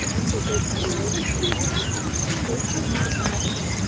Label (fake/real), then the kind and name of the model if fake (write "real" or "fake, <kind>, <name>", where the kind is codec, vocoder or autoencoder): real